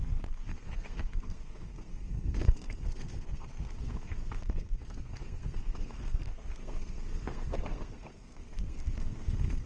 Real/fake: fake